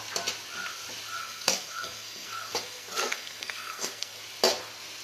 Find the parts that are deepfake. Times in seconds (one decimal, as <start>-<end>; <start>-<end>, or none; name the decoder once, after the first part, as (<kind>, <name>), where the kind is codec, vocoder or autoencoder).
1.2-4.2 (codec, SNAC)